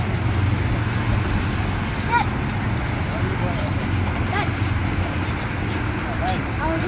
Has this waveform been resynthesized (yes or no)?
no